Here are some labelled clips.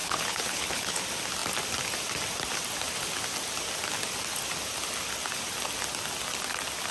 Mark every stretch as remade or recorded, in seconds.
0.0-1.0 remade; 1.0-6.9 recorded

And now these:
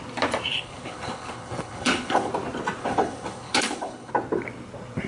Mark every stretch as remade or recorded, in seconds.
0.0-0.5 recorded; 0.5-2.3 remade; 2.3-2.8 recorded; 2.8-4.1 remade; 4.1-5.1 recorded